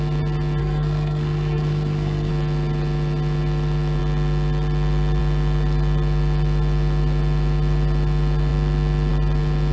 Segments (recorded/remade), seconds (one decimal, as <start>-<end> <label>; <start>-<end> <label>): 0.0-0.6 recorded; 0.6-2.3 remade; 2.3-9.7 recorded